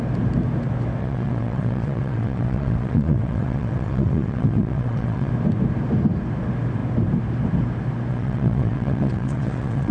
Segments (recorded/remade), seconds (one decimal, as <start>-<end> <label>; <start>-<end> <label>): 0.0-1.0 recorded; 1.0-5.3 remade; 5.3-8.1 recorded; 8.1-9.9 remade